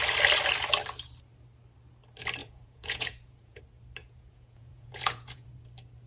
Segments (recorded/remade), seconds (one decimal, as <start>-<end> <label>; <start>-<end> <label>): 0.0-2.4 recorded; 2.4-3.6 remade; 3.6-4.0 recorded; 4.0-5.5 remade; 5.5-6.1 recorded

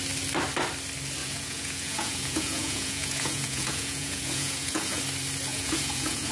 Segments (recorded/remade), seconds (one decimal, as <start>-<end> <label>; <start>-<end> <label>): 0.0-1.2 recorded; 1.2-5.0 remade; 5.0-5.5 recorded; 5.5-6.3 remade

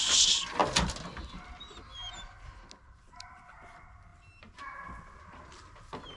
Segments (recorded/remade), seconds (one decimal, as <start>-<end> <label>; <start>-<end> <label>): 0.0-6.2 recorded

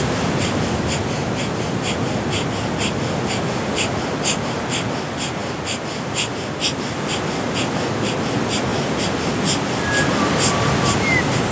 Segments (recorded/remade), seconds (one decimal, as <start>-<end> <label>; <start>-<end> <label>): 0.0-11.5 recorded